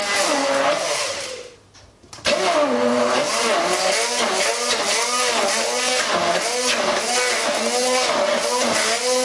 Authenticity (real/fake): real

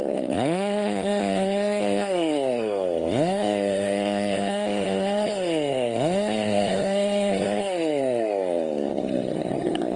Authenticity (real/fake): fake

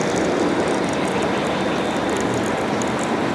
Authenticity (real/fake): real